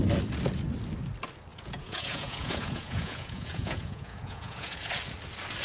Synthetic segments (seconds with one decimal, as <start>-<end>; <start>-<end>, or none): 1.5-4.9